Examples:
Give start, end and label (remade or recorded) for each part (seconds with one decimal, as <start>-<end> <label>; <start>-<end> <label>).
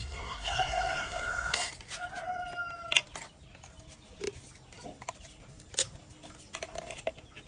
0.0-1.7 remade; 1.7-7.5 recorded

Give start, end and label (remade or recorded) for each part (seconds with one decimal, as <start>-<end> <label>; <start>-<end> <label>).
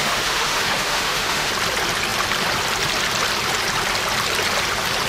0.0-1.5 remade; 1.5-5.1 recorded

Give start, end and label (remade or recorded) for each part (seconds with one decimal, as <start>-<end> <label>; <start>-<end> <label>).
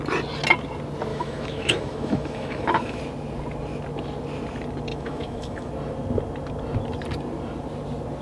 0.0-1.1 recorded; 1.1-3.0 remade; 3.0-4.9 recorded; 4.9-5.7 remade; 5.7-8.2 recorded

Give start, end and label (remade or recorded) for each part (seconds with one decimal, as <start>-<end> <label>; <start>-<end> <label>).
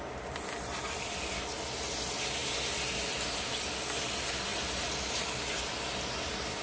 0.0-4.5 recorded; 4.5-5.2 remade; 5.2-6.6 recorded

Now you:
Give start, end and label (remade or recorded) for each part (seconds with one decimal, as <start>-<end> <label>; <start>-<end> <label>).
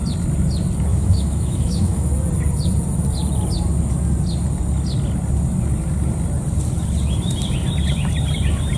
0.0-0.9 recorded; 0.9-2.1 remade; 2.1-8.8 recorded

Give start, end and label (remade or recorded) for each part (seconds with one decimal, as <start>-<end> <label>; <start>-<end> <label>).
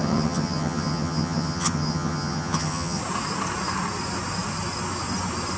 0.0-3.0 remade; 3.0-5.6 recorded